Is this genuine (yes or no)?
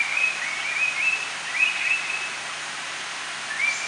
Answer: yes